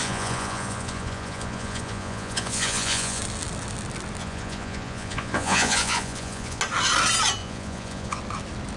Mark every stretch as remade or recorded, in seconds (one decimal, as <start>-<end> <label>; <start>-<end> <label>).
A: 0.0-3.2 remade; 3.2-4.2 recorded; 4.2-6.6 remade; 6.6-7.4 recorded; 7.4-8.2 remade; 8.2-8.8 recorded